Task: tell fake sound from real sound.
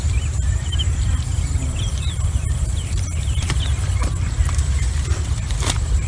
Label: fake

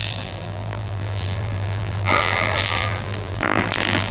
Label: fake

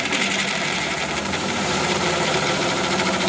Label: fake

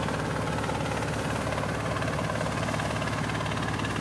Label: real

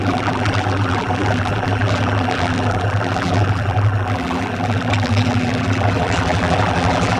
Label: fake